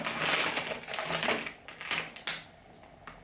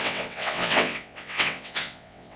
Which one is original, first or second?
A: first